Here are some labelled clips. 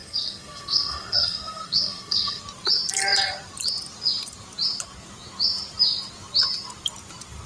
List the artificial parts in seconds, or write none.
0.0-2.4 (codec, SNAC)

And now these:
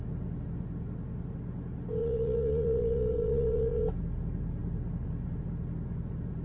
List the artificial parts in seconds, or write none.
2.0-3.8 (vocoder, Vocos)